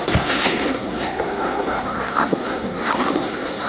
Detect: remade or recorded remade